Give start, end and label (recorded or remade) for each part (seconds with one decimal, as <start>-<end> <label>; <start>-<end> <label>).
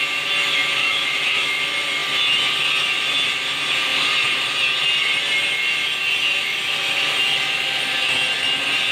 0.0-0.8 recorded; 0.8-1.6 remade; 1.6-8.9 recorded